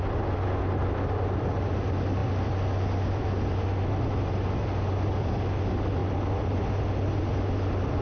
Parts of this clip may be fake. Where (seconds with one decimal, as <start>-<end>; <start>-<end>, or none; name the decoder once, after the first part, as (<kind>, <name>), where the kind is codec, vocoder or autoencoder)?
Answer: none